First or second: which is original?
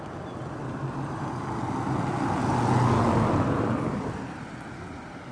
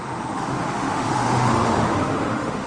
first